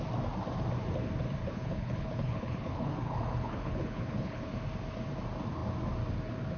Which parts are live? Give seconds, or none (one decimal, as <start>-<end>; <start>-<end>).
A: 0.0-1.4; 4.5-6.6